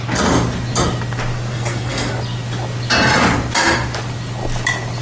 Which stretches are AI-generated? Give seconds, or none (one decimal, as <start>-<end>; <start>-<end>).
1.5-2.1